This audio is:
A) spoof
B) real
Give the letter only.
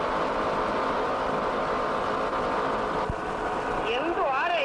B